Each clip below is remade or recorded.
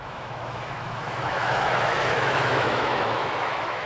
remade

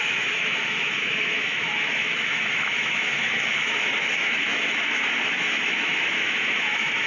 remade